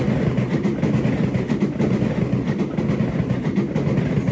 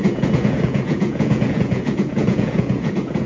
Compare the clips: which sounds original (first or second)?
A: first